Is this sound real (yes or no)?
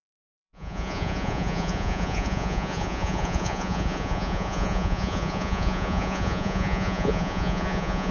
no